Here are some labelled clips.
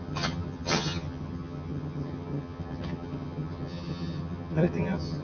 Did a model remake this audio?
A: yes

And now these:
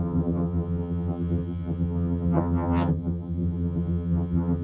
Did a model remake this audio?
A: yes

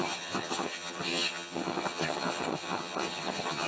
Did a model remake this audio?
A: yes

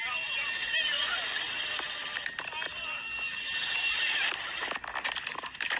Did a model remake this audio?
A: no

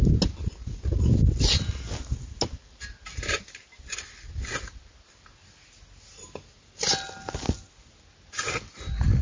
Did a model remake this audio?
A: no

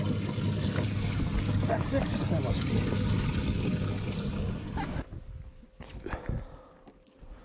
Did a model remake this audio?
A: no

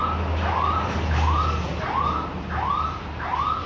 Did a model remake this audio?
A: no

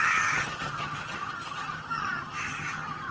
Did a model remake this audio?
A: yes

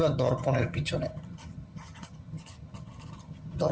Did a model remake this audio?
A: yes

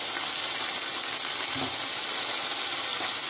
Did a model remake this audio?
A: no